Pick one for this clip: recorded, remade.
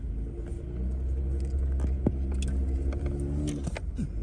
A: recorded